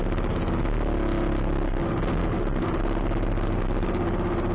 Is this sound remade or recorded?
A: recorded